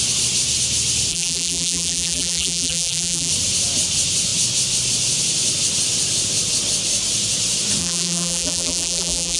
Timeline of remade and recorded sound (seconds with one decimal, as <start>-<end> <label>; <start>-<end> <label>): 0.0-1.1 recorded; 1.1-3.3 remade; 3.3-7.8 recorded; 7.8-9.4 remade